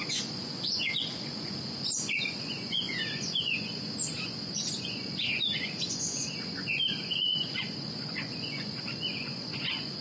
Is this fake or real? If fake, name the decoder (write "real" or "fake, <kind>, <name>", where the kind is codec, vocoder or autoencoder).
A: fake, vocoder, Vocos